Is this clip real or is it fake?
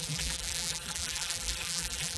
fake